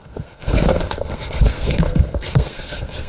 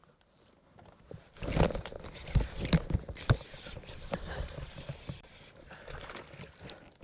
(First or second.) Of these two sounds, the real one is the second